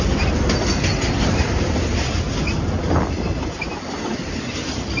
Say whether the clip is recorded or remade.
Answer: recorded